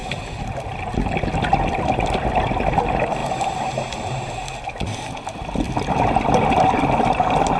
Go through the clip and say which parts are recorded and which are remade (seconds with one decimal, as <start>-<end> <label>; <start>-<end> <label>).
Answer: 0.0-7.6 recorded